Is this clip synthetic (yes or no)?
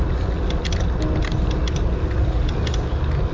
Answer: no